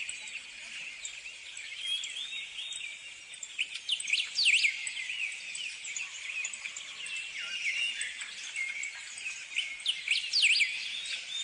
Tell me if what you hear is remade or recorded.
recorded